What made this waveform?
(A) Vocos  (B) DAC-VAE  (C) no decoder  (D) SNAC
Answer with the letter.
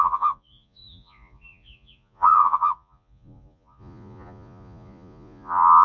A